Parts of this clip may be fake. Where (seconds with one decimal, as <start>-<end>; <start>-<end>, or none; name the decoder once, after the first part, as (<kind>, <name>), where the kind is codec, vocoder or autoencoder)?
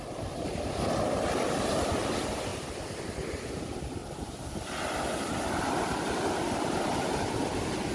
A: none